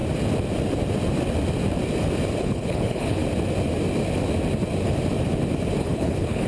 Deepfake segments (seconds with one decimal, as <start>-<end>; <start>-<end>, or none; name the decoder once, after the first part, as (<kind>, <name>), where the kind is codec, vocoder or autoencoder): 2.4-3.2 (codec, HILCodec); 5.8-6.5